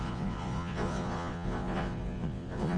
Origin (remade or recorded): remade